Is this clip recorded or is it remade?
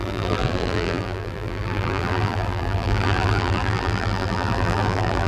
remade